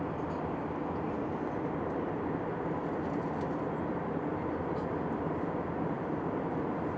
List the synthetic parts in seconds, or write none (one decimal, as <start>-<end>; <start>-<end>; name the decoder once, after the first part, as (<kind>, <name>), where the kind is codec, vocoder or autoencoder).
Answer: none

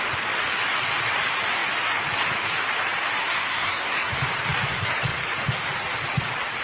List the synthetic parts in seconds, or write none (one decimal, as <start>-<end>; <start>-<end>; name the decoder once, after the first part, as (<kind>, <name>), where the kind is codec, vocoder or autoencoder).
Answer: 3.2-4.1 (codec, SNAC)

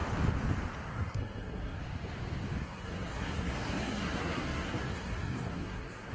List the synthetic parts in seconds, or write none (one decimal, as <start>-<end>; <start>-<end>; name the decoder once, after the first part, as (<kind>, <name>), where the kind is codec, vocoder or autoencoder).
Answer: 0.9-1.8 (codec, SNAC); 2.6-6.1

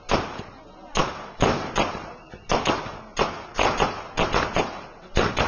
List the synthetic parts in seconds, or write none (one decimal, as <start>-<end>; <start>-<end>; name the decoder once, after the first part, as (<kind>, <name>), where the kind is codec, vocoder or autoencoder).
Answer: none